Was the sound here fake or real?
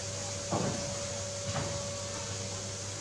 real